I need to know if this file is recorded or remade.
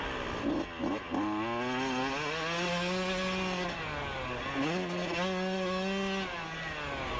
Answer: recorded